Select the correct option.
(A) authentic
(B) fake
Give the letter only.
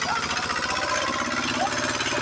A